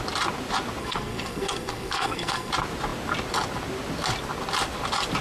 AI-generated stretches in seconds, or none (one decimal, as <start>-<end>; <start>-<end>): 0.8-2.5